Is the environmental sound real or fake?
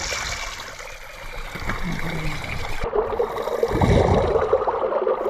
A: real